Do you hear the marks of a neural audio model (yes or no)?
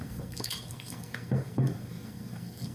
yes